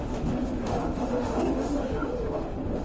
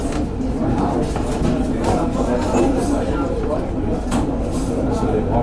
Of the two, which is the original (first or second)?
second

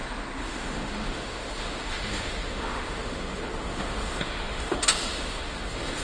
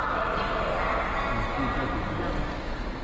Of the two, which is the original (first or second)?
second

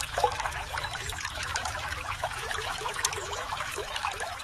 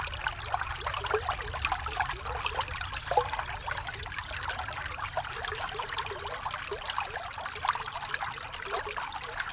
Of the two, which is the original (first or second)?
second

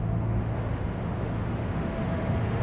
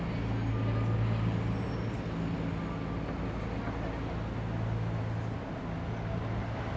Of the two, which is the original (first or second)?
second